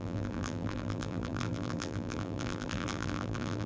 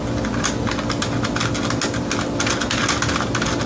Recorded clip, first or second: second